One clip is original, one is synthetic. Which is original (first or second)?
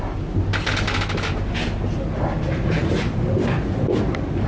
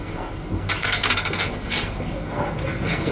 first